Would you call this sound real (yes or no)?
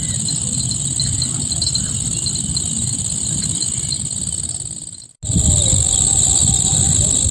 yes